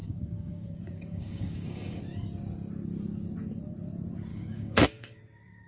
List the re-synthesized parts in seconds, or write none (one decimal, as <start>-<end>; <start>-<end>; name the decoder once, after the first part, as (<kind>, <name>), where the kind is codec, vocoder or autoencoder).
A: 0.0-2.0 (codec, DAC); 4.3-5.2

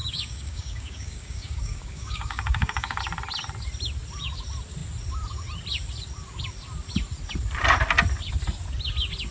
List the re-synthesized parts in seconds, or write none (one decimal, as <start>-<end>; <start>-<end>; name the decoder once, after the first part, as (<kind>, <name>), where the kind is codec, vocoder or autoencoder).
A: 0.0-3.0 (codec, DAC)